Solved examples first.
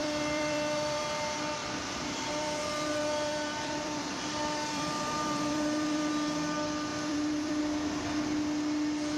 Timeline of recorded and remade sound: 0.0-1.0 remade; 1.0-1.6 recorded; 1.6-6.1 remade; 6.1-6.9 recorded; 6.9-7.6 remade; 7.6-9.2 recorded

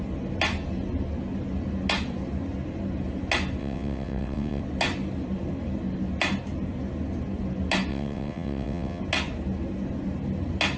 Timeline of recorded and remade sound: 0.0-3.6 recorded; 3.6-4.6 remade; 4.6-7.9 recorded; 7.9-9.0 remade; 9.0-10.8 recorded

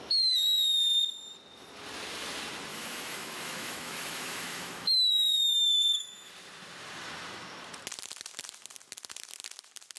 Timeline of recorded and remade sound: 0.0-2.7 recorded; 2.7-6.3 remade; 6.3-10.0 recorded

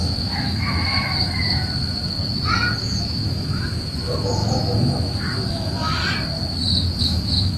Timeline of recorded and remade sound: 0.0-2.0 remade; 2.0-2.8 recorded; 2.8-6.0 remade; 6.0-7.0 recorded; 7.0-7.6 remade

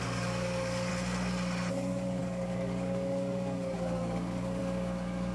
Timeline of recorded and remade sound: 0.0-0.9 remade; 0.9-1.7 recorded; 1.7-5.3 remade

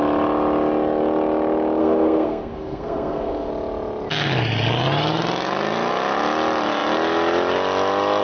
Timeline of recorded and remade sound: 0.0-1.8 recorded; 1.8-3.5 remade; 3.5-8.2 recorded

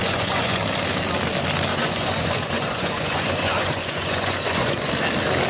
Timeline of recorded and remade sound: 0.0-0.6 remade; 0.6-1.7 recorded; 1.7-4.9 remade; 4.9-5.5 recorded

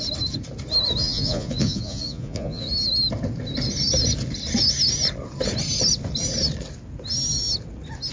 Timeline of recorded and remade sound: 0.0-1.0 recorded; 1.0-2.7 remade; 2.7-8.1 recorded